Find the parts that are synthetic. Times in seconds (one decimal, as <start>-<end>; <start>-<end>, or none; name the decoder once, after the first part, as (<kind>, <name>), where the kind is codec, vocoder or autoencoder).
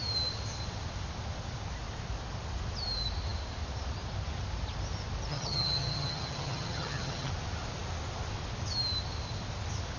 5.3-7.3 (vocoder, HiFi-GAN)